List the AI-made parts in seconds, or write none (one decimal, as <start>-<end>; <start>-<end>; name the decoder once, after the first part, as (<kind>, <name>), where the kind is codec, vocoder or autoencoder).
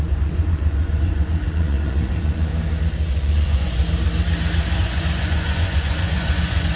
0.0-2.5 (vocoder, Vocos); 3.1-3.8; 4.8-6.8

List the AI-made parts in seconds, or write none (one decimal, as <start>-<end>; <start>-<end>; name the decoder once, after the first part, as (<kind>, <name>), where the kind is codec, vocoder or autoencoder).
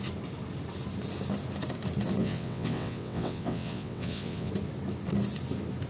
2.2-4.5 (vocoder, WaveNeXt)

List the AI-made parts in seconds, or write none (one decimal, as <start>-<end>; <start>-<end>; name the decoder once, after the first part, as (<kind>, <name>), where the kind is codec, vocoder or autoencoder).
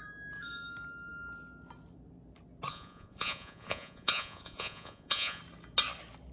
2.7-5.4 (vocoder, Vocos)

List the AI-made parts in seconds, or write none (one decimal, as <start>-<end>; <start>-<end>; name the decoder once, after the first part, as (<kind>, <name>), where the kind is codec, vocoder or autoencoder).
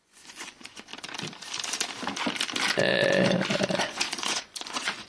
0.0-0.9 (vocoder, Vocos); 3.8-5.1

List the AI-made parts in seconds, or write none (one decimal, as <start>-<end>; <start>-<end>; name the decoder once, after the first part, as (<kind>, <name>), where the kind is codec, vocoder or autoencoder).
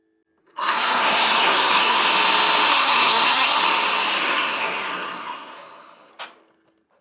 0.4-2.0 (codec, SNAC); 2.7-3.6; 4.2-6.1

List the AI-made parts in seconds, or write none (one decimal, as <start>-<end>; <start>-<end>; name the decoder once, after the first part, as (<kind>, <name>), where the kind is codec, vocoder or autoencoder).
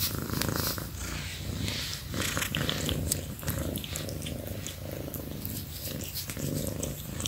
none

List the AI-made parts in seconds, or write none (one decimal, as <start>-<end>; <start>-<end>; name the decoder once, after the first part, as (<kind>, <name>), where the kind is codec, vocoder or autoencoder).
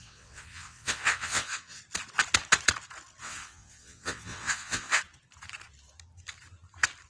0.0-1.8 (vocoder, WaveNeXt); 3.2-5.0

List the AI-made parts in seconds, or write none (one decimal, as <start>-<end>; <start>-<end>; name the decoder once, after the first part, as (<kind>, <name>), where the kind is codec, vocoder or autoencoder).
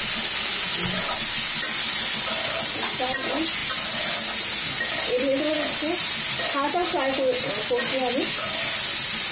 none